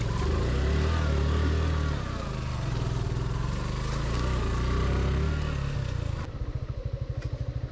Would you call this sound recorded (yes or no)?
yes